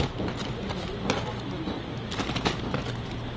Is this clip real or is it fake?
real